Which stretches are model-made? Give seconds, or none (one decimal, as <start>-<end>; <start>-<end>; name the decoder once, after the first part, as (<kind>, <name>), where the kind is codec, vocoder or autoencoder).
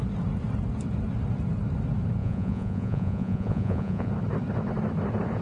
2.2-4.1 (vocoder, Vocos)